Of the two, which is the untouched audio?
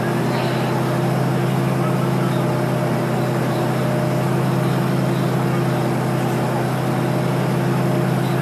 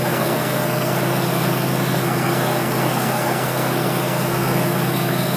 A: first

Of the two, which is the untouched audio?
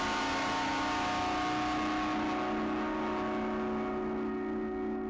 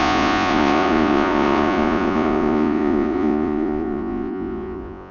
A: first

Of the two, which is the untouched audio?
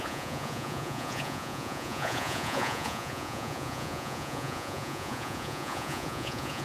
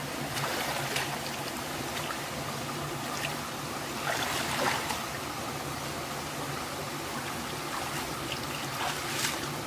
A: second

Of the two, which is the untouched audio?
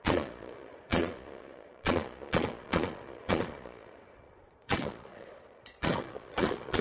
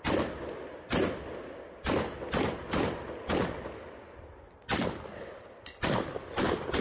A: second